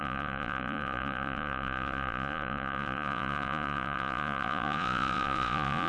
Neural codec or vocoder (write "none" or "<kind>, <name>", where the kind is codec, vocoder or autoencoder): vocoder, Vocos